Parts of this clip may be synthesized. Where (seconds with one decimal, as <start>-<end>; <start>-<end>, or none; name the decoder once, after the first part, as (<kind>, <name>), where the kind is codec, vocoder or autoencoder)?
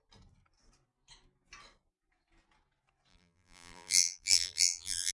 3.1-5.1 (vocoder, BigVGAN v2)